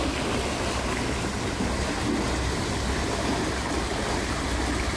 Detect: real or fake real